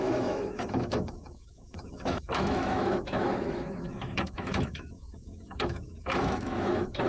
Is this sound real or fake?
fake